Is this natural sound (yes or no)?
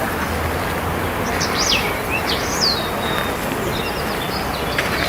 yes